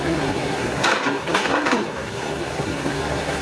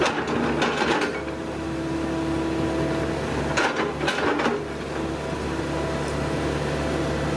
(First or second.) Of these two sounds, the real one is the second